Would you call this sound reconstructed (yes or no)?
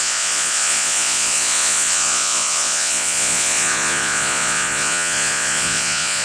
yes